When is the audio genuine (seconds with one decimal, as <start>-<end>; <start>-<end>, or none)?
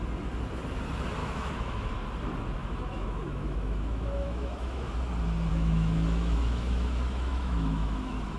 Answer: 0.0-1.2; 1.9-2.6; 4.9-5.5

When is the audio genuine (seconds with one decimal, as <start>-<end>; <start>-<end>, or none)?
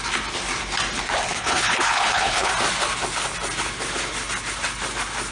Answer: 0.0-1.3; 2.5-5.3